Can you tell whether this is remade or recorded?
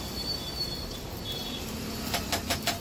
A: recorded